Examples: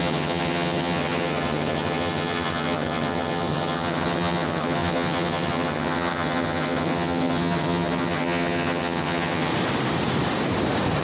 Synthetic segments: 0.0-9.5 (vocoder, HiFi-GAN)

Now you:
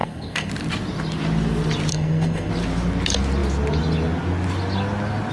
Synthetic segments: 0.0-0.5 (codec, SNAC); 1.9-2.5